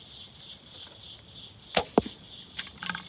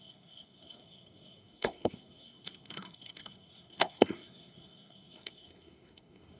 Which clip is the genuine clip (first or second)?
first